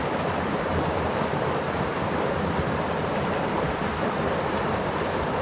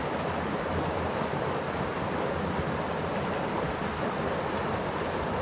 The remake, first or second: first